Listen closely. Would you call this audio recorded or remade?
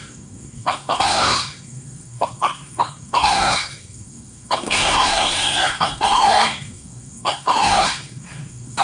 remade